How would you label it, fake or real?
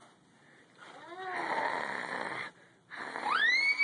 real